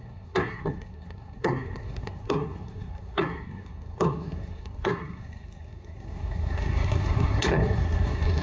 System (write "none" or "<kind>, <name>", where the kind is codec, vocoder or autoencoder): codec, SNAC